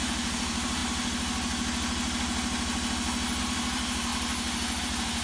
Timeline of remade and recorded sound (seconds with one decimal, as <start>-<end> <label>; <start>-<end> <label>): 0.0-0.8 remade; 0.8-3.4 recorded; 3.4-4.1 remade; 4.1-4.8 recorded; 4.8-5.2 remade